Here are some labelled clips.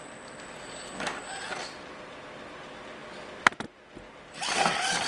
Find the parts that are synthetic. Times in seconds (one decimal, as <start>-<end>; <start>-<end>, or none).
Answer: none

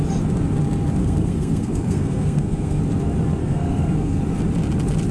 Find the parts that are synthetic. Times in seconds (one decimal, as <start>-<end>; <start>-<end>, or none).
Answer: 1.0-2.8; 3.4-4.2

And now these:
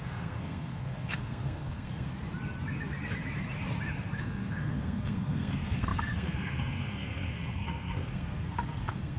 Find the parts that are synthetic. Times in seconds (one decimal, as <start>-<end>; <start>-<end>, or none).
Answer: 0.0-2.1; 4.2-9.2

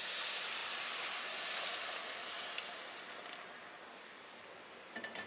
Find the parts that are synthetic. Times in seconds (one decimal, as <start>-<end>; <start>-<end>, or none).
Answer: none

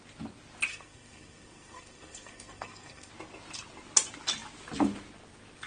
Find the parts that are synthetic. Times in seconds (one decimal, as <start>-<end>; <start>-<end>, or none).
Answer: 0.7-3.1

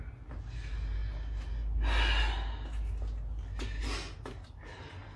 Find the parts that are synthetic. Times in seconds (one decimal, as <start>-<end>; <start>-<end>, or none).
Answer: none